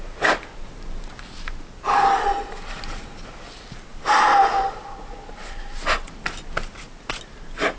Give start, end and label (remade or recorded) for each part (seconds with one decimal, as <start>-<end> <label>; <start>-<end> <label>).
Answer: 0.0-7.8 recorded